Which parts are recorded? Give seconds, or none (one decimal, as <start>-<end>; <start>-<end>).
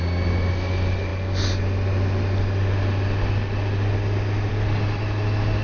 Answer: 0.0-5.6